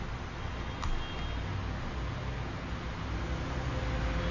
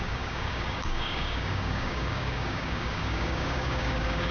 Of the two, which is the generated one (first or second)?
second